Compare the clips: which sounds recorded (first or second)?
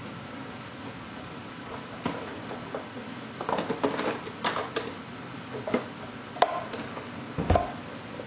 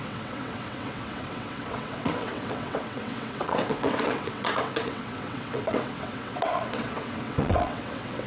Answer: first